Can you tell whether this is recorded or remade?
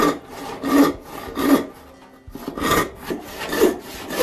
recorded